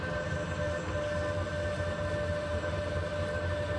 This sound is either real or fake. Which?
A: real